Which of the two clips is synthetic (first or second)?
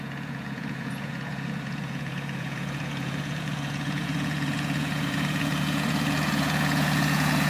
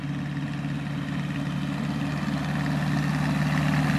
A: first